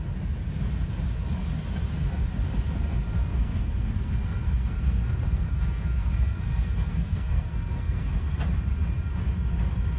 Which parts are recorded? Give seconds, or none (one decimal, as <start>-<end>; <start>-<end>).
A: 0.0-3.2; 8.4-10.0